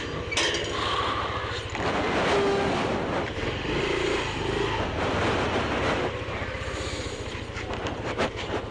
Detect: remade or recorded recorded